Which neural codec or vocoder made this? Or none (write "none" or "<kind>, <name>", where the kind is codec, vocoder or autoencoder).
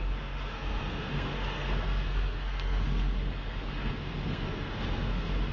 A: codec, SNAC